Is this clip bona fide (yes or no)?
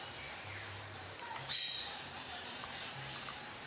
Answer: no